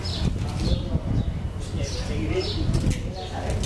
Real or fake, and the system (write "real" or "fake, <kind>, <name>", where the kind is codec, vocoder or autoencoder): real